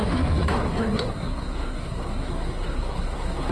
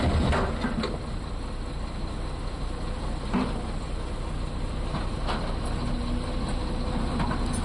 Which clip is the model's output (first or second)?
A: first